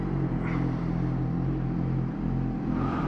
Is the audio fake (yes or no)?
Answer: no